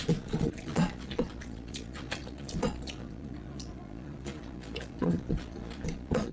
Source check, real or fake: fake